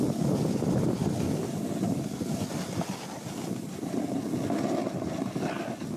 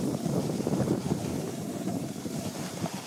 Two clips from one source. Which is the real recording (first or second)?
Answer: first